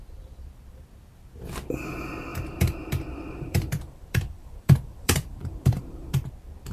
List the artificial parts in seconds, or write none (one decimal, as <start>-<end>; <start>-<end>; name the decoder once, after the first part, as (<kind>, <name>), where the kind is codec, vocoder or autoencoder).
2.3-6.3 (vocoder, BigVGAN v2)